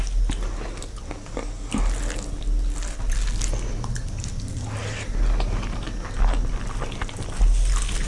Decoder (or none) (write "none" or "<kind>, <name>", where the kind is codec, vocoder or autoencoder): none